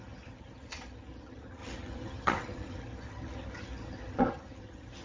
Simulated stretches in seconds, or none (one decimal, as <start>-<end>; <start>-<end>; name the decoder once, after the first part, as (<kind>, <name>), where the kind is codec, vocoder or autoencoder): 0.0-5.0 (vocoder, HiFi-GAN)